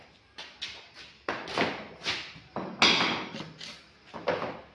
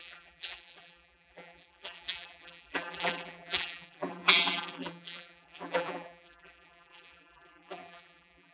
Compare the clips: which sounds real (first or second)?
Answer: first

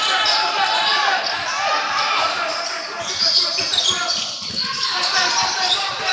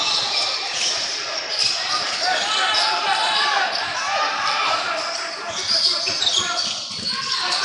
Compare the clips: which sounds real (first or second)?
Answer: first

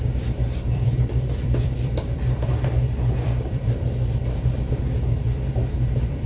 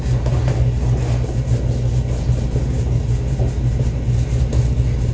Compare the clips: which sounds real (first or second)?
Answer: second